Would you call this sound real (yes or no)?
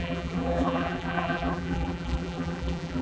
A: no